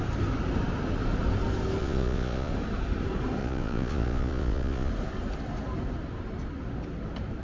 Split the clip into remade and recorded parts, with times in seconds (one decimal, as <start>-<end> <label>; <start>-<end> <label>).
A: 0.0-1.8 recorded; 1.8-2.5 remade; 2.5-3.4 recorded; 3.4-4.9 remade; 4.9-7.4 recorded